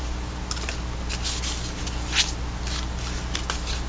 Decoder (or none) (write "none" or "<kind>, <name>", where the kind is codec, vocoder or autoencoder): none